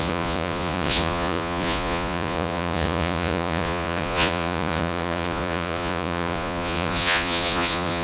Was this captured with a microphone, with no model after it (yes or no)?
no